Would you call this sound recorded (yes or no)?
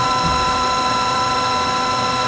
no